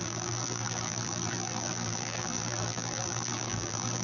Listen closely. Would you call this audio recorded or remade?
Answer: remade